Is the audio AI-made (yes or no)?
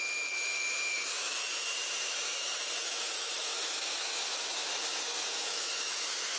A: yes